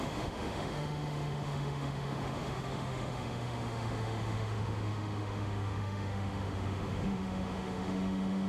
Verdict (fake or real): fake